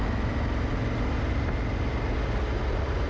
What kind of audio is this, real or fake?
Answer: real